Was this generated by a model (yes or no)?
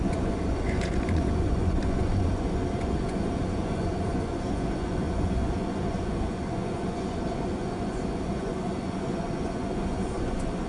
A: yes